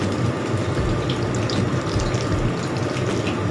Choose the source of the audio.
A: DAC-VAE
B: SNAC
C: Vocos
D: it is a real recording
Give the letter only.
D